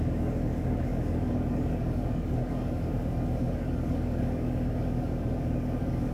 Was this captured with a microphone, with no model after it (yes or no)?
no